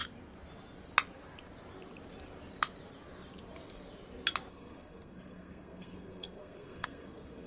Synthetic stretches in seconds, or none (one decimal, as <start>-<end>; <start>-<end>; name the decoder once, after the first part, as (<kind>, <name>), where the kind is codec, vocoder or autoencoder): 4.5-7.5 (codec, SNAC)